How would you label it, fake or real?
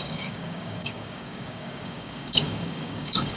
fake